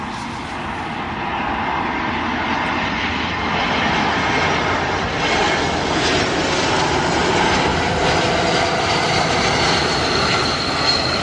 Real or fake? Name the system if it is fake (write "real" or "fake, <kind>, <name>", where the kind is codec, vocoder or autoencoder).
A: real